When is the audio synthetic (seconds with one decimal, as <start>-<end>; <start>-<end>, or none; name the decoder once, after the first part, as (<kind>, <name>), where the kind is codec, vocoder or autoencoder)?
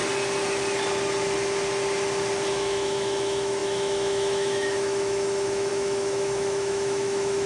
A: 2.5-7.5 (autoencoder, DAC-VAE)